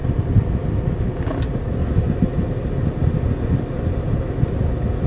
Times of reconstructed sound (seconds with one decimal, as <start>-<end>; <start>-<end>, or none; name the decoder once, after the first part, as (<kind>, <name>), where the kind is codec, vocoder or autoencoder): none